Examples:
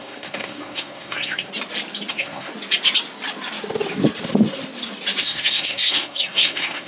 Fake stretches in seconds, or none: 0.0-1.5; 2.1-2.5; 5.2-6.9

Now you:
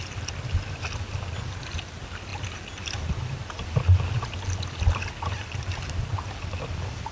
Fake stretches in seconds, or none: none

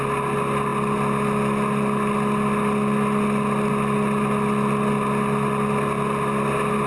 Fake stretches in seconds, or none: none

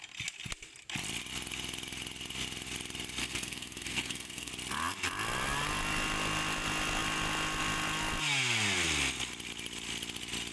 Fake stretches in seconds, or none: 3.2-4.5